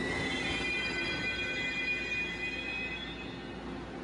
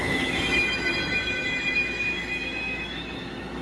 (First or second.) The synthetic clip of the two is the second